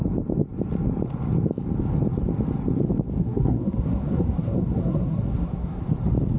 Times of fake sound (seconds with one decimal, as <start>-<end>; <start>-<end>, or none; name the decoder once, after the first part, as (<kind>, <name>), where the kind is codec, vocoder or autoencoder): 3.2-5.8 (codec, SNAC)